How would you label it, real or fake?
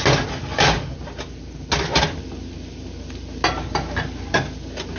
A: real